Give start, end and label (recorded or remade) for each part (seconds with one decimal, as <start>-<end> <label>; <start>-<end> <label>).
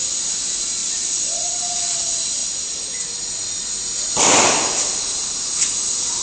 0.0-0.8 recorded; 0.8-1.6 remade; 1.6-2.4 recorded; 2.4-3.0 remade; 3.0-6.2 recorded